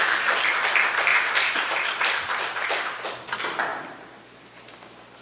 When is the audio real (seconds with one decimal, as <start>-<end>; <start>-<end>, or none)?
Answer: 0.0-1.1; 2.4-3.7; 4.6-5.2